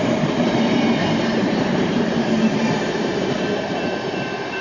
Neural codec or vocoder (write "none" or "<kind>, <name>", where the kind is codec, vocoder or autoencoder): vocoder, BigVGAN v2